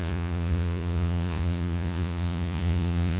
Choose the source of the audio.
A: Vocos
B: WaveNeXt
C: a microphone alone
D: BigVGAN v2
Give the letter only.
A